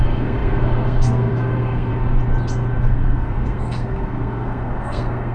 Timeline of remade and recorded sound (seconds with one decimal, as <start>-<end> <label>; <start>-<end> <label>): 0.0-1.9 remade; 1.9-2.8 recorded; 2.8-5.3 remade